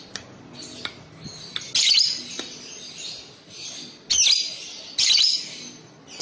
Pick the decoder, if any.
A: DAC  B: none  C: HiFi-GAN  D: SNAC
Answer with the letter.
B